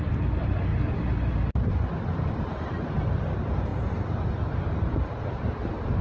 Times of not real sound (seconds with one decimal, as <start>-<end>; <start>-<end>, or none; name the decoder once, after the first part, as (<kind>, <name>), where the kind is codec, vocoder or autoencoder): 0.0-0.7 (vocoder, BigVGAN v2); 1.9-3.7; 4.9-6.0